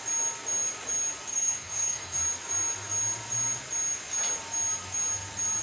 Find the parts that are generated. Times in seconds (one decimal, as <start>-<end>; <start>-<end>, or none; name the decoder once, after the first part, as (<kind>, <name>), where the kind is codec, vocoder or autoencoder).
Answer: 1.3-2.2 (codec, SNAC)